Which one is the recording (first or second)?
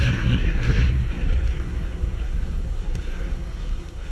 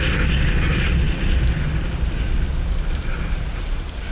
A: second